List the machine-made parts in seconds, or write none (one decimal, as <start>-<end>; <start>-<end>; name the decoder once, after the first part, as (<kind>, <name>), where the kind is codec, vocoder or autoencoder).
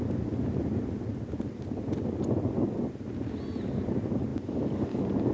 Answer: none